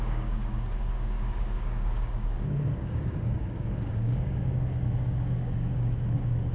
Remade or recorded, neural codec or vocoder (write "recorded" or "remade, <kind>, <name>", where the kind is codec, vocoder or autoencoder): remade, codec, DAC